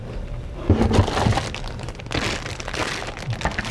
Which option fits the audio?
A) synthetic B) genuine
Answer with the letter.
B